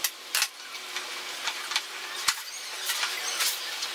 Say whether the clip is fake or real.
real